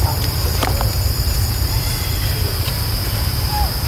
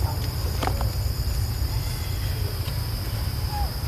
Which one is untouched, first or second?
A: second